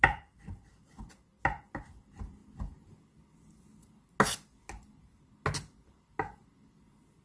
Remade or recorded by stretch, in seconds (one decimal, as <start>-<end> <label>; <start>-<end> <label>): 0.0-7.2 recorded